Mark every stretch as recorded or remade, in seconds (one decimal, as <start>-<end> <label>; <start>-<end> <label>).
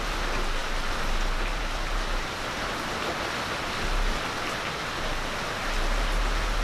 0.0-6.6 recorded